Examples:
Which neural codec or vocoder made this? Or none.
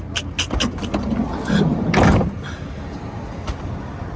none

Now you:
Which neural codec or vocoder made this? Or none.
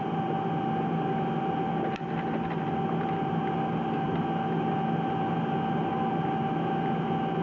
none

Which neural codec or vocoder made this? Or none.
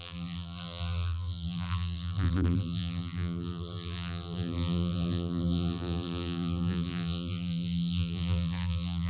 vocoder, BigVGAN v2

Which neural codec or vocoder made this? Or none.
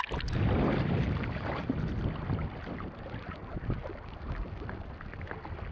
none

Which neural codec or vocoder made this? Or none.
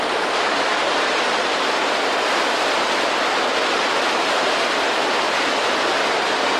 none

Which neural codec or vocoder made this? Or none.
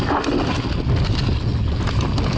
none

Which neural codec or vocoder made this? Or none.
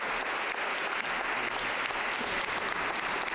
none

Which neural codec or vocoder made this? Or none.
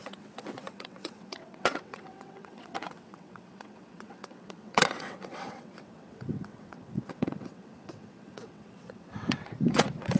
vocoder, WaveNeXt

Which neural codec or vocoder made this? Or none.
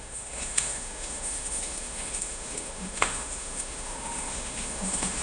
autoencoder, DAC-VAE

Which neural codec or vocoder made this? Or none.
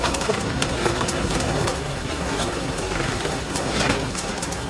codec, SNAC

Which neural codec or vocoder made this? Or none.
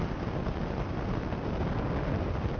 none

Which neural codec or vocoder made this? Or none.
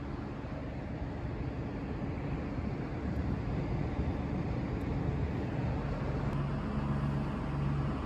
none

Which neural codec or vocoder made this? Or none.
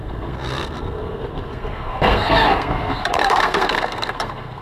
codec, SNAC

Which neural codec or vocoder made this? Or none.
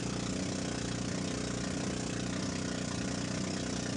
none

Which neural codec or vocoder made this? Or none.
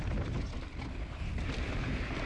none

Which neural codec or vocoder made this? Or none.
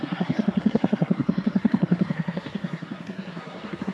codec, SNAC